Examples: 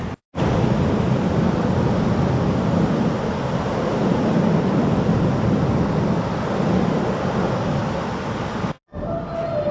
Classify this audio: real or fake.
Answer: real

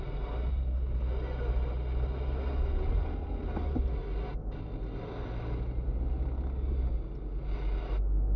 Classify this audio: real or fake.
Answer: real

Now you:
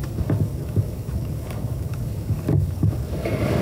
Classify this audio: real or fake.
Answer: fake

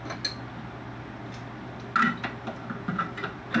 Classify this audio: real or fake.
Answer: real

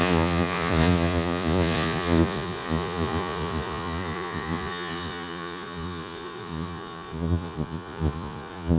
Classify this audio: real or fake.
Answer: fake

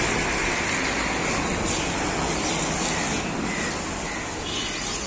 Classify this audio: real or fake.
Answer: real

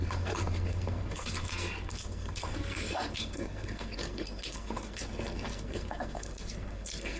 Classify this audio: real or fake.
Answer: fake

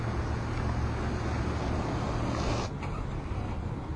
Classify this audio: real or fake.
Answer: real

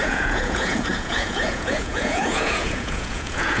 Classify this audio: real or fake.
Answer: fake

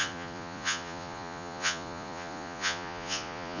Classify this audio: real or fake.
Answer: fake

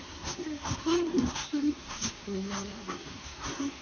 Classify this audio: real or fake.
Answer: fake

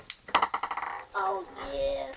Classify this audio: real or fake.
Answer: real